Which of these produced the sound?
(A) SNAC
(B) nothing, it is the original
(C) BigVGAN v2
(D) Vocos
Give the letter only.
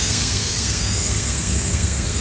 A